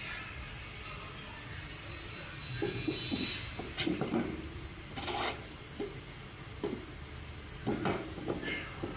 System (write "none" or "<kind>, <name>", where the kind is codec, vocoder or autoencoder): none